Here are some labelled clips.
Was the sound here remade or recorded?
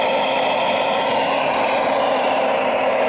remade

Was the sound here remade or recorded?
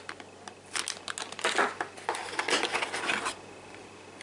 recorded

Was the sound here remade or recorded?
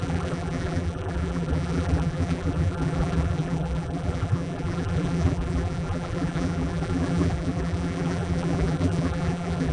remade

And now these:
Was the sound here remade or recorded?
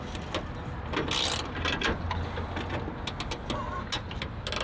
recorded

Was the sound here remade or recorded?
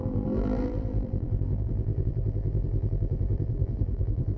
remade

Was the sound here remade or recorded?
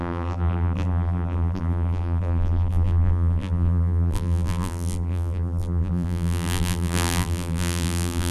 remade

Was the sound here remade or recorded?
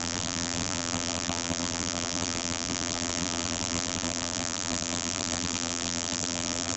remade